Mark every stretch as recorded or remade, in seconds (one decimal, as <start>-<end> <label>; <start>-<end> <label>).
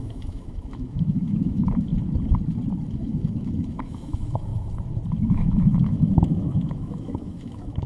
0.0-1.9 remade; 1.9-3.0 recorded; 3.0-4.5 remade; 4.5-5.2 recorded; 5.2-7.9 remade